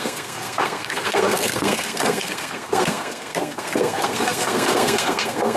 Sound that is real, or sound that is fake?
fake